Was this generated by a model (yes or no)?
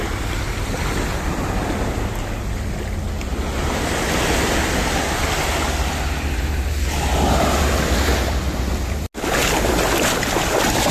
no